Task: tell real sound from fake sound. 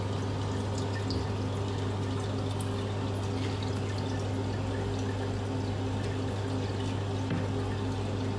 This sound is real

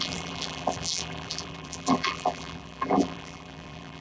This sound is fake